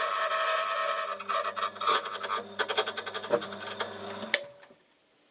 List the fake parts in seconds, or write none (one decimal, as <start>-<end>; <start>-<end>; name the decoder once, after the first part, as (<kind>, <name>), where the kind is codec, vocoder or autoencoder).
none